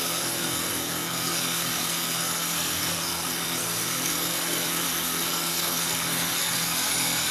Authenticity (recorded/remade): remade